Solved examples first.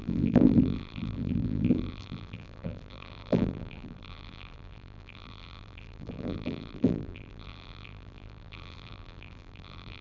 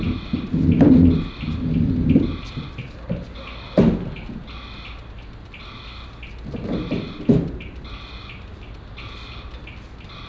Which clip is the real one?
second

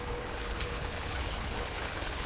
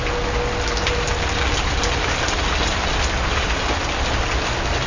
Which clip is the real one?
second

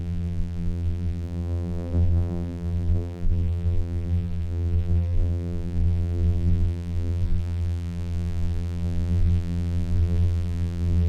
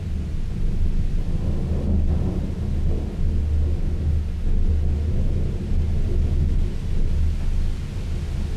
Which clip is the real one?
second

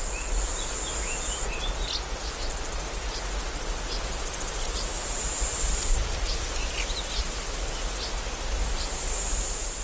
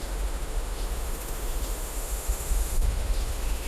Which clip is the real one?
first